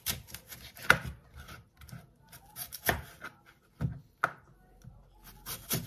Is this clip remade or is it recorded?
recorded